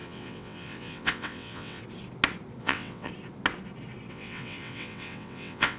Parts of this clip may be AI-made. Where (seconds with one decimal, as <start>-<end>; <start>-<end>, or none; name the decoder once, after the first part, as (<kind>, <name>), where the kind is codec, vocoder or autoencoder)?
0.0-1.8 (vocoder, WaveNeXt); 2.6-3.1; 4.1-5.8